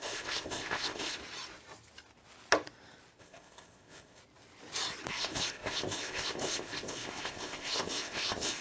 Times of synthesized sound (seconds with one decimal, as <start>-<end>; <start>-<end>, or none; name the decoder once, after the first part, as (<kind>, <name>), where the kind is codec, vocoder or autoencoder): 0.0-1.2 (codec, ZipCodec); 3.2-4.2; 5.1-8.6